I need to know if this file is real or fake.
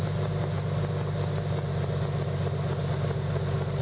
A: real